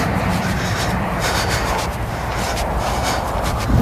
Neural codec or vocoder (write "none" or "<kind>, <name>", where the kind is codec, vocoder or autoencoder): vocoder, BigVGAN v2